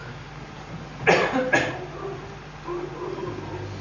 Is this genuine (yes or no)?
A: yes